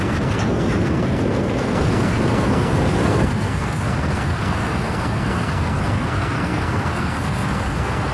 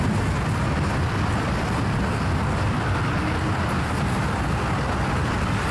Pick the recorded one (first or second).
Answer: second